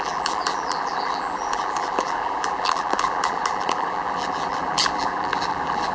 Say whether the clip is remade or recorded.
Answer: remade